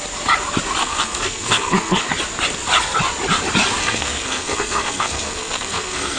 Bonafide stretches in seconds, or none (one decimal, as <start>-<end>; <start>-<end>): 0.0-0.8; 2.0-3.8